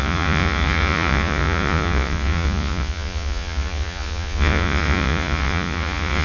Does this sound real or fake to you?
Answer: fake